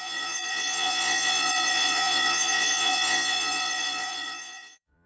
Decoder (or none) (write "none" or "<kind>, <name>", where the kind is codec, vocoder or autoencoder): vocoder, Vocos